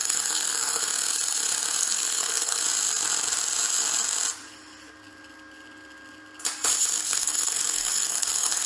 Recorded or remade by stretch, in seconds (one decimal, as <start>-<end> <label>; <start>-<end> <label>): 0.0-0.8 remade; 0.8-1.8 recorded; 1.8-2.6 remade; 2.6-7.0 recorded; 7.0-8.7 remade